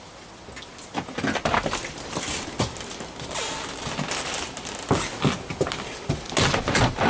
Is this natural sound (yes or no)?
yes